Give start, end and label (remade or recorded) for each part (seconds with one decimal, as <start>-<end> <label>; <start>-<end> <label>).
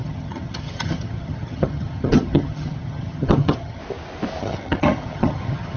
0.0-3.8 remade; 3.8-4.4 recorded; 4.4-5.8 remade